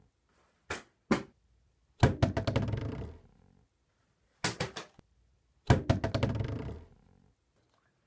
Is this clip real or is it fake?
real